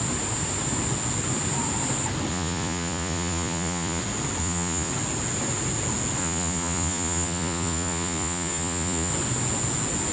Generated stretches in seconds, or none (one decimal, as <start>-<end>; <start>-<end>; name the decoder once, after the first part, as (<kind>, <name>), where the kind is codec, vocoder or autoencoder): 2.3-4.0 (vocoder, Vocos); 4.4-4.9; 6.2-9.1